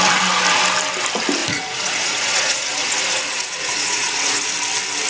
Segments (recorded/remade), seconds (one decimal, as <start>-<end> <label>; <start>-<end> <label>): 0.0-1.4 recorded; 1.4-4.5 remade; 4.5-5.1 recorded